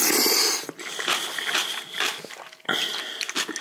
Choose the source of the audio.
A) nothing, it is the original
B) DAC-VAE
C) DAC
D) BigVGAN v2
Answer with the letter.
A